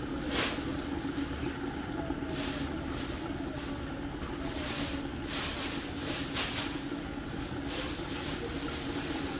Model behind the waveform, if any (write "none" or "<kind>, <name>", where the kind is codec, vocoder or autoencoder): none